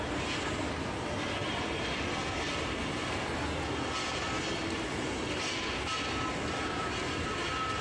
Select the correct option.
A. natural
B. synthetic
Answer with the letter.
A